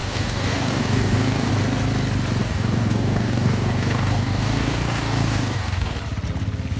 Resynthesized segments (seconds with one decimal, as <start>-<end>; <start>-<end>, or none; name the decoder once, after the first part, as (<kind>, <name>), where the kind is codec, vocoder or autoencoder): 0.0-1.5 (codec, DAC); 2.4-6.0

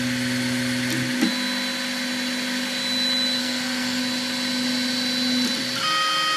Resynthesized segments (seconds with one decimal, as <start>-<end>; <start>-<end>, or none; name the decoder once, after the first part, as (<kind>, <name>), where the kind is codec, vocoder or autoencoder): 3.4-4.0 (codec, SNAC)

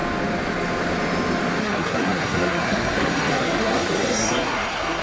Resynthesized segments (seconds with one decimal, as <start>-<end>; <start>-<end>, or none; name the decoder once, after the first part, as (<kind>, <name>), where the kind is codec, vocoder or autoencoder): 1.6-5.0 (codec, SNAC)

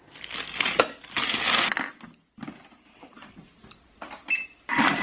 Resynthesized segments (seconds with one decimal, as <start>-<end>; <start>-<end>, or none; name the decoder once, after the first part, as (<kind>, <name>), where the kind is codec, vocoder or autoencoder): 1.9-5.0 (vocoder, BigVGAN v2)

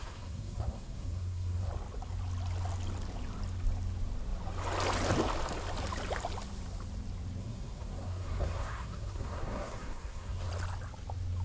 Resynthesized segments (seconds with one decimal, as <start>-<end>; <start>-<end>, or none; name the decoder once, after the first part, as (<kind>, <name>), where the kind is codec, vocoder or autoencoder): 0.0-1.7 (codec, SNAC); 7.4-10.5

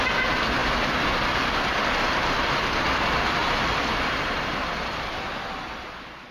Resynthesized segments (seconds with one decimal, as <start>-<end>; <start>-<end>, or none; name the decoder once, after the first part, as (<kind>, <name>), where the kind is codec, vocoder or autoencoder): none

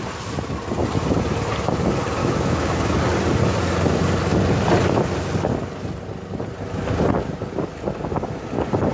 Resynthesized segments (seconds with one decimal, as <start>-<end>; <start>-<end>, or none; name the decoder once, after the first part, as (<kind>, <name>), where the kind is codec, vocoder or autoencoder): 2.2-3.0 (autoencoder, DAC-VAE)